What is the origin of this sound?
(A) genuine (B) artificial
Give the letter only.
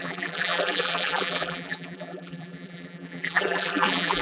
B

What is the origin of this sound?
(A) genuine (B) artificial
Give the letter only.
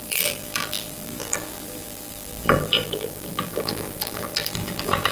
B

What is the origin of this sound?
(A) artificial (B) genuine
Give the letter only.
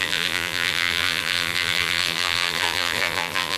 A